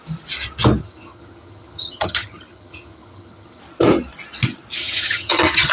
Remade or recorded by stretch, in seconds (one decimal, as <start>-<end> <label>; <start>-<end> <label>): 0.0-0.8 recorded; 0.8-3.6 remade; 3.6-4.8 recorded; 4.8-5.7 remade